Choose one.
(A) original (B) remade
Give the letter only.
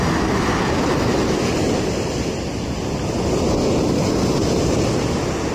A